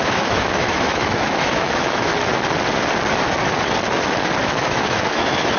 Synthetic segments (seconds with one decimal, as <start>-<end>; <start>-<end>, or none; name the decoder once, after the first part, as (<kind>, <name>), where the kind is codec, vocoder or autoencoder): 0.0-2.1 (autoencoder, DAC-VAE); 4.4-5.6